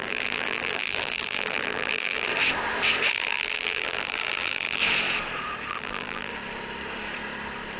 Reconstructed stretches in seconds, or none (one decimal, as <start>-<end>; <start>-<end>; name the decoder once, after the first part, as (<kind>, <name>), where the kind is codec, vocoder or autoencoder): 0.0-2.3 (vocoder, BigVGAN v2); 3.1-4.8; 5.7-6.3